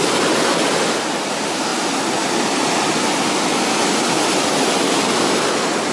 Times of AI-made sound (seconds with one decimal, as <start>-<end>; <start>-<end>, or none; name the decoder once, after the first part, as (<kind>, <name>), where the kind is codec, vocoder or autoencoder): none